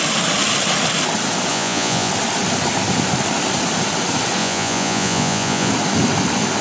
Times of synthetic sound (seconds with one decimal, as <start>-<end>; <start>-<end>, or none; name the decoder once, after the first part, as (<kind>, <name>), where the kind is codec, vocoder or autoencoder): 1.5-2.1 (vocoder, Vocos); 4.4-5.7